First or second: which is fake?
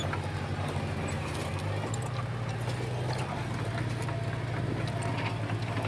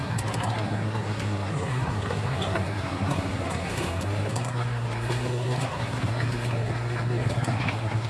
second